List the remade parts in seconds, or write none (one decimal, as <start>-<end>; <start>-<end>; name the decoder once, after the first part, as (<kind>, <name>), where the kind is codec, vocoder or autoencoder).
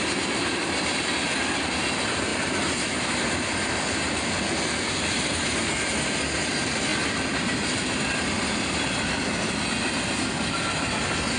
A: none